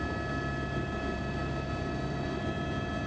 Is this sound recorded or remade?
recorded